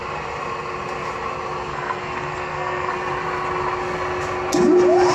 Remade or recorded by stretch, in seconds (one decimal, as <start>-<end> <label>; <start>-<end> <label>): 0.0-1.7 recorded; 1.7-2.9 remade; 2.9-5.1 recorded